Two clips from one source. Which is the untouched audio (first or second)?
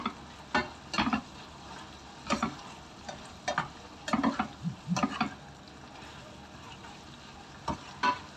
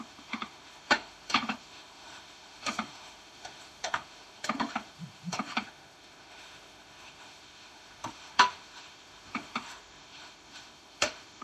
first